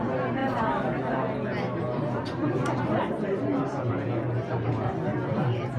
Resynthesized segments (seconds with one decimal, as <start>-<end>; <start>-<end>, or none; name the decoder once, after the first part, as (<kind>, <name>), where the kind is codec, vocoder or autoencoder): none